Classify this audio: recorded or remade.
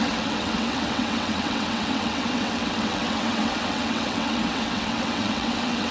remade